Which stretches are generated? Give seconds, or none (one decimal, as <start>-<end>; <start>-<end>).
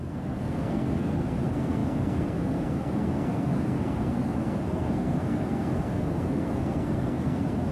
0.0-7.7